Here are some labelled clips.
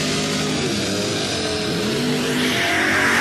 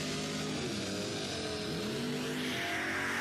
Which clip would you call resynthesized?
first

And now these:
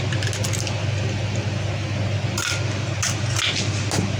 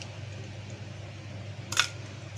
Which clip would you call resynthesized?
second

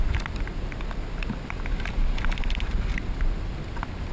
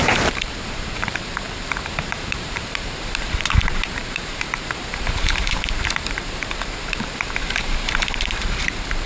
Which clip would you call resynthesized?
second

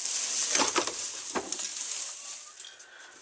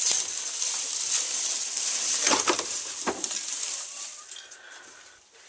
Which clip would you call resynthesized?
second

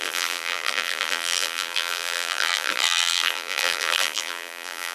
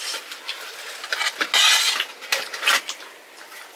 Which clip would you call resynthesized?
first